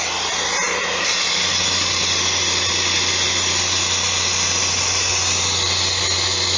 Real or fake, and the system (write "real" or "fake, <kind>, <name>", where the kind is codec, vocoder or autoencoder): real